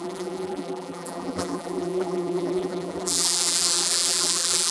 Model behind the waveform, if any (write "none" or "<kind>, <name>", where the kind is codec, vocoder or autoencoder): vocoder, BigVGAN v2